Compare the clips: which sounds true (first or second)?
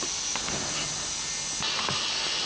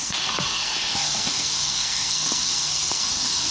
first